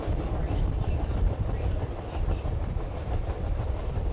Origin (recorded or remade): remade